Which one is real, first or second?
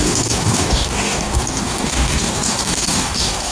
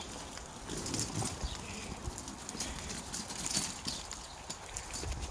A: second